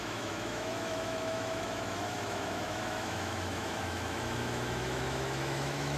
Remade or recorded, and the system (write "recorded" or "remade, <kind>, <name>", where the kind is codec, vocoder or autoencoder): remade, autoencoder, DAC-VAE